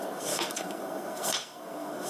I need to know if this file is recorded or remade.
remade